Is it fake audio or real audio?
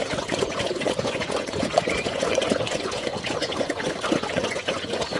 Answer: fake